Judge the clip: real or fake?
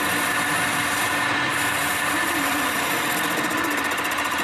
real